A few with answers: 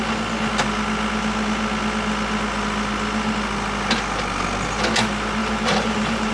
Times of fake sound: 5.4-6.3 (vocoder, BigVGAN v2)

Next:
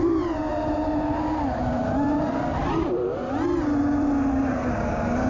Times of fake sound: 0.0-0.5 (vocoder, BigVGAN v2); 1.6-2.5; 3.8-5.3

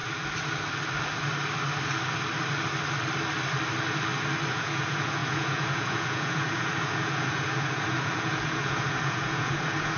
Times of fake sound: 4.5-10.0 (vocoder, Vocos)

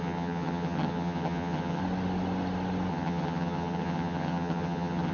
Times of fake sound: 0.0-1.8 (vocoder, HiFi-GAN); 2.9-5.1